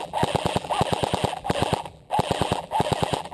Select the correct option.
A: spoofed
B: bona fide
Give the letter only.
A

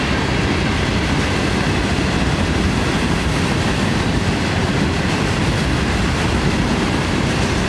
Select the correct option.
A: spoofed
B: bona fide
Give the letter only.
A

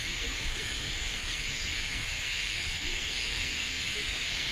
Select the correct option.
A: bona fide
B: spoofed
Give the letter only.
B